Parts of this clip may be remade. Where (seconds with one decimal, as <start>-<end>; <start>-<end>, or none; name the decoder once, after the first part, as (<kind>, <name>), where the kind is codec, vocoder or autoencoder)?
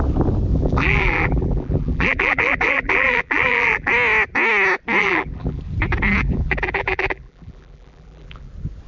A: 0.5-3.9 (vocoder, BigVGAN v2); 5.0-5.6; 6.2-8.5